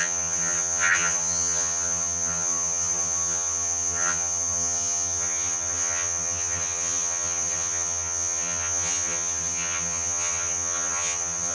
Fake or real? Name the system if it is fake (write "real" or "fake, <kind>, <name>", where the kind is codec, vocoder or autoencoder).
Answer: fake, vocoder, HiFi-GAN